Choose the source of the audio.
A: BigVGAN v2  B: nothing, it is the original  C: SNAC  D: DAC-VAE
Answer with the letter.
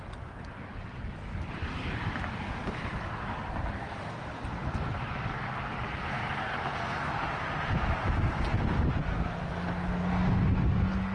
B